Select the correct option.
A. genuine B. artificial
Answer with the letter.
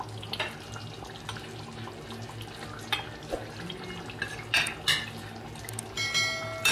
A